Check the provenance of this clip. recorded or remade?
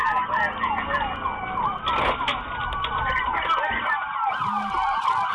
recorded